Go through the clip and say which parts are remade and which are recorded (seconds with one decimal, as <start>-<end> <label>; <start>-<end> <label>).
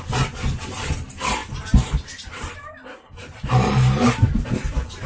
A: 0.0-1.4 recorded; 1.4-4.5 remade; 4.5-5.1 recorded